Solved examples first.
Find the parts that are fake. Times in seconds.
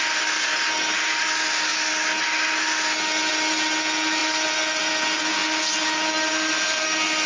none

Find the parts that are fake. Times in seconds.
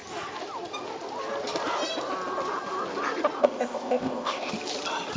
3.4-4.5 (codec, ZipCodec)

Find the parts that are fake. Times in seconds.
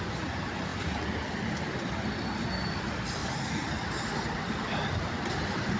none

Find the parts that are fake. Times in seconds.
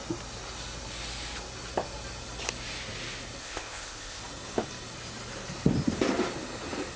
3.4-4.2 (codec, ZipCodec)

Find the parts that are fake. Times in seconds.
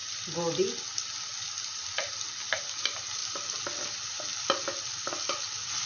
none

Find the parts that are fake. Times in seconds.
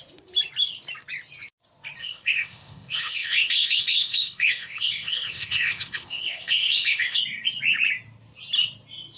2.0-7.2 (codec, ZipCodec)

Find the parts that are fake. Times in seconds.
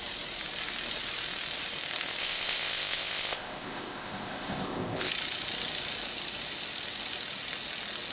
2.2-5.1 (codec, ZipCodec)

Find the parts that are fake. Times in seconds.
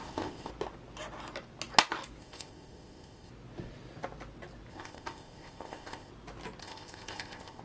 0.0-0.5 (codec, ZipCodec); 2.2-3.3; 4.7-6.1; 6.6-7.6